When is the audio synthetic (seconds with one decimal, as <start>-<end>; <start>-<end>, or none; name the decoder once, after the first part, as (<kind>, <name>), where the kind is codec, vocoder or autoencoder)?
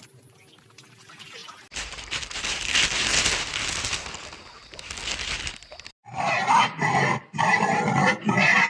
none